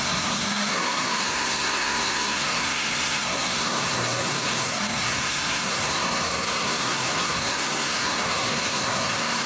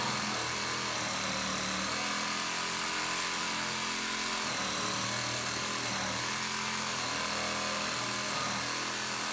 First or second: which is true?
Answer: second